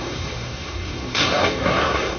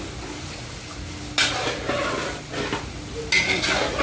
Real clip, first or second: second